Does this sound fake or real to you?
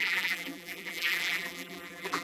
fake